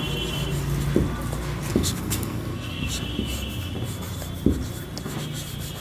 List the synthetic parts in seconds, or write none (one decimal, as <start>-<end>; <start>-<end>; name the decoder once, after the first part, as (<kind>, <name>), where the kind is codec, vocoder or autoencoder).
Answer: 1.7-2.9 (codec, SNAC)